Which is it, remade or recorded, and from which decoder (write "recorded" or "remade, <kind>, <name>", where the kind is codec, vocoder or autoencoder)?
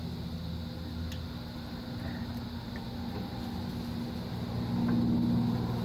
recorded